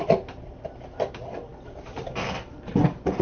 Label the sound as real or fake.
fake